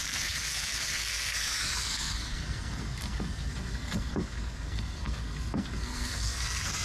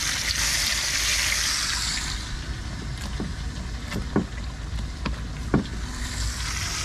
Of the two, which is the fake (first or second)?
first